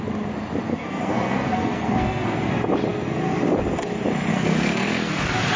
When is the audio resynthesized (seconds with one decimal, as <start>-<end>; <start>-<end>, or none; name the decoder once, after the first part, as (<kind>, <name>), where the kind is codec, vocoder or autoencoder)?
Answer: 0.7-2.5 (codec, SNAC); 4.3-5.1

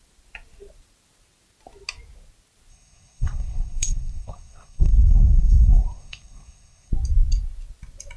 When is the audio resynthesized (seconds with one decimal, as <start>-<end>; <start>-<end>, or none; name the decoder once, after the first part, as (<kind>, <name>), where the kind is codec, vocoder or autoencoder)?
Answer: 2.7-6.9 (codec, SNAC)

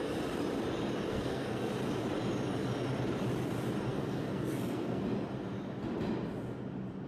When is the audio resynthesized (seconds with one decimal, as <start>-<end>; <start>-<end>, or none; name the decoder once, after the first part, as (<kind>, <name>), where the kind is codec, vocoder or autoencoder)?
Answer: 1.1-1.7 (codec, SNAC); 3.9-5.0